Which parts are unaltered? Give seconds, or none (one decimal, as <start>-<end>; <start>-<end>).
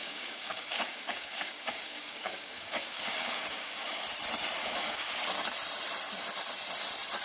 4.0-4.6; 5.2-7.2